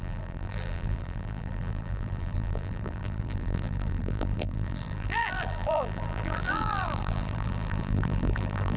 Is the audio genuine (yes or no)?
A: no